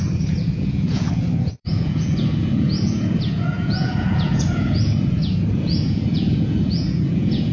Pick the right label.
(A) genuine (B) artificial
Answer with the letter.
B